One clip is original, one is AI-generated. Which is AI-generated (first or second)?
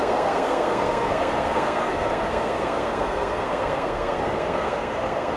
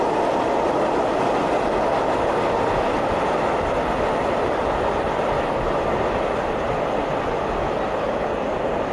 first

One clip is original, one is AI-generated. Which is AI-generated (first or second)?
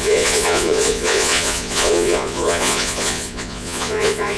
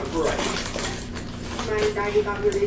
first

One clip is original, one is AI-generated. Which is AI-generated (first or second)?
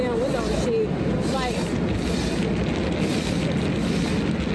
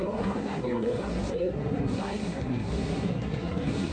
second